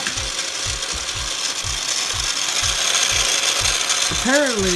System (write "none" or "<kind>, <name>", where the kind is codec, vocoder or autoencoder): none